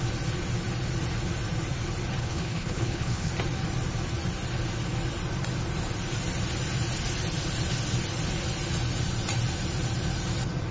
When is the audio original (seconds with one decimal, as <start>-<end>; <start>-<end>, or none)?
0.0-2.2; 3.3-10.7